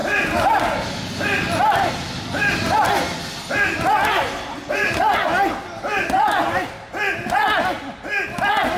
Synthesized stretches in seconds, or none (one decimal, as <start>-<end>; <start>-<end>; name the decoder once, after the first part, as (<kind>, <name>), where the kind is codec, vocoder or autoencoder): none